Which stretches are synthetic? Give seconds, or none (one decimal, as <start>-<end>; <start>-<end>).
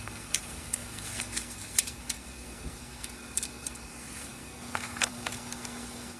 0.0-6.2